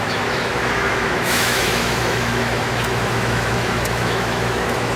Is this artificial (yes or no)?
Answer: yes